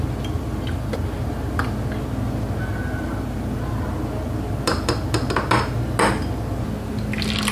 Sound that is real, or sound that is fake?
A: real